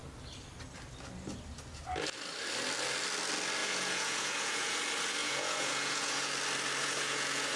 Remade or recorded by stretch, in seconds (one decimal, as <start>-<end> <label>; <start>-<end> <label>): 0.0-3.6 recorded; 3.6-4.8 remade; 4.8-5.2 recorded; 5.2-6.3 remade; 6.3-6.8 recorded; 6.8-7.6 remade

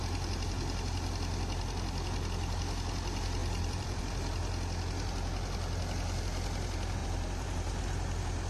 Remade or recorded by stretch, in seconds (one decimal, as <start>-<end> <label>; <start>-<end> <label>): 0.0-3.4 recorded; 3.4-4.0 remade; 4.0-7.0 recorded; 7.0-7.8 remade; 7.8-8.5 recorded

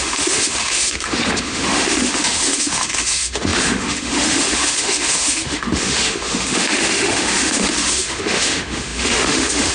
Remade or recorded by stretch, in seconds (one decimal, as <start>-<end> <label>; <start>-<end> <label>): 0.0-9.7 remade

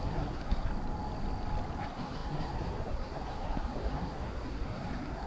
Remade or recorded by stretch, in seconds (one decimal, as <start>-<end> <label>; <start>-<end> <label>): 0.0-0.7 remade; 0.7-1.8 recorded; 1.8-5.3 remade

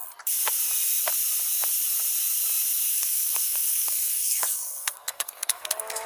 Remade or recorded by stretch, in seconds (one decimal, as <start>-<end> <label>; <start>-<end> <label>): 0.0-2.9 recorded; 2.9-6.1 remade

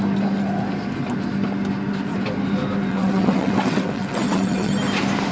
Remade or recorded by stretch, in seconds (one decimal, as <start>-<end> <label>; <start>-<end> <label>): 0.0-2.9 recorded; 2.9-4.7 remade; 4.7-5.3 recorded

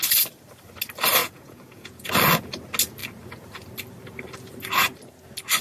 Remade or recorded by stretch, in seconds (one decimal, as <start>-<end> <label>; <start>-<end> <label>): 0.0-1.2 recorded; 1.2-2.1 remade; 2.1-5.6 recorded

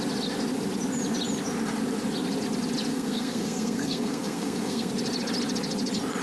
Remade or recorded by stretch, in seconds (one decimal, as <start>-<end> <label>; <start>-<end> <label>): 0.0-2.9 recorded; 2.9-4.9 remade; 4.9-6.2 recorded